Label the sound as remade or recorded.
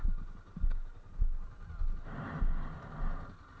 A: recorded